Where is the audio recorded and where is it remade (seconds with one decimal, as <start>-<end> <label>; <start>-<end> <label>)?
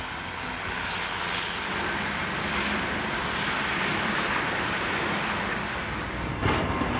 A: 0.0-3.9 recorded; 3.9-5.3 remade; 5.3-7.0 recorded